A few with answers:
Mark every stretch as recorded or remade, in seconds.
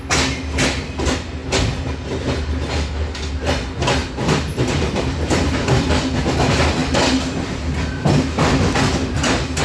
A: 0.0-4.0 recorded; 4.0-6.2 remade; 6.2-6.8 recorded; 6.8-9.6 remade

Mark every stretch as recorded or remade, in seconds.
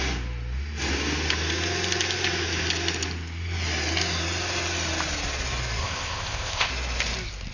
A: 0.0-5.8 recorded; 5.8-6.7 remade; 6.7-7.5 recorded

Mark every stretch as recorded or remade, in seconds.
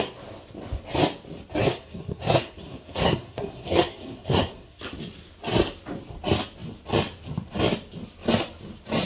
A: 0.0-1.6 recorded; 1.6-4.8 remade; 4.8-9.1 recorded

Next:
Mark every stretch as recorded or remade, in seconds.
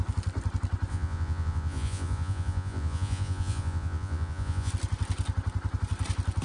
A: 0.0-0.9 recorded; 0.9-4.7 remade; 4.7-6.4 recorded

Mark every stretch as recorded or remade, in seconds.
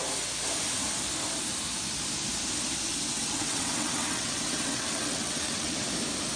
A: 0.0-2.9 recorded; 2.9-5.9 remade; 5.9-6.4 recorded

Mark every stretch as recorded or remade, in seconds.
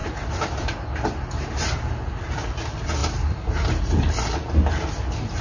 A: 0.0-1.9 remade; 1.9-3.0 recorded; 3.0-4.1 remade; 4.1-5.4 recorded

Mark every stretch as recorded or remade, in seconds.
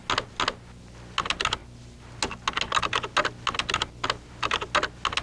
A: 0.0-5.2 recorded